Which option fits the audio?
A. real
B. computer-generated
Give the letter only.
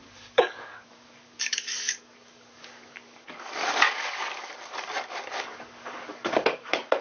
B